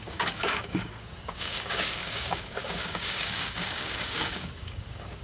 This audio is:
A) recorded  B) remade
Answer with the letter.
B